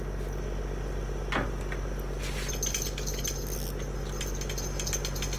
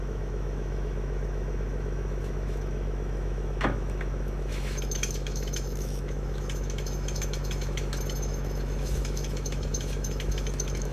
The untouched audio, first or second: first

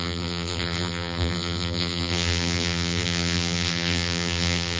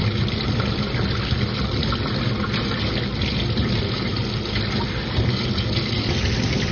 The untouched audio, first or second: second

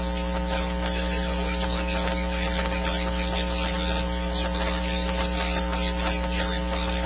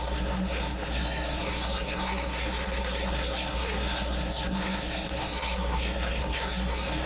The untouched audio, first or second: first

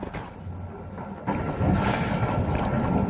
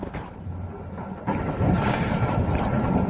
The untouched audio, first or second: first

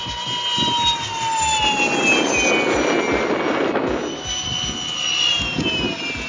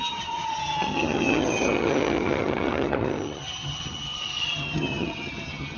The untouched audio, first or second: first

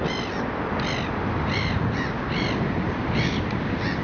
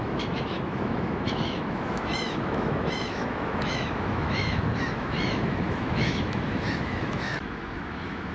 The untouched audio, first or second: first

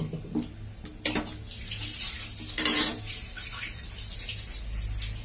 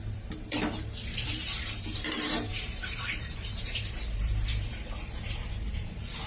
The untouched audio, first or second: first